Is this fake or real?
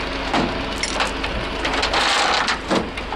real